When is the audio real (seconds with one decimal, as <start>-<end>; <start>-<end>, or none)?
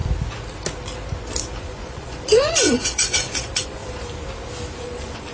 0.0-1.6; 3.8-4.8